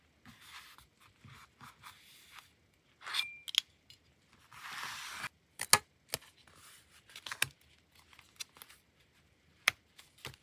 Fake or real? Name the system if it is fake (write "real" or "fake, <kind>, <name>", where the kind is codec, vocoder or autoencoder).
real